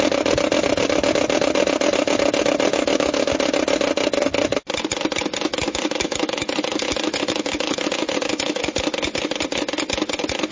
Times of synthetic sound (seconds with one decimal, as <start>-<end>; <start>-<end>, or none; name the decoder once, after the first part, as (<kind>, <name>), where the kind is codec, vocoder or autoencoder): 2.7-3.3 (autoencoder, DAC-VAE); 5.5-8.6